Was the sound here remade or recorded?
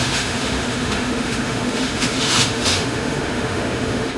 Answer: remade